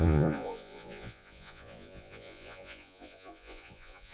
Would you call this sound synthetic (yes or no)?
yes